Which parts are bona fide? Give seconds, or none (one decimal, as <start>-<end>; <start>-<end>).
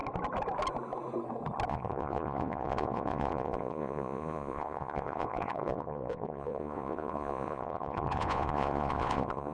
0.0-1.7